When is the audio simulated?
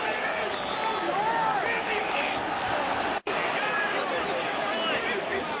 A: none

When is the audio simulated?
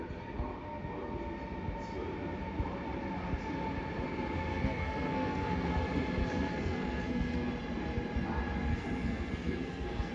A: 4.5-5.7 (codec, SNAC); 6.2-7.5; 8.7-10.1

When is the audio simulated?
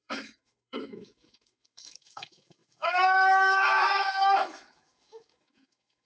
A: 0.0-6.1 (autoencoder, DAC-VAE)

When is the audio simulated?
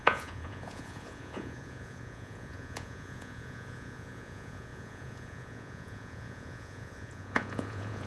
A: 0.0-8.1 (vocoder, Vocos)